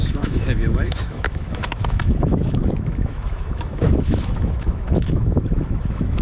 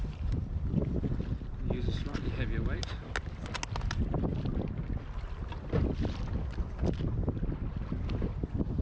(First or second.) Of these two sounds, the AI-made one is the first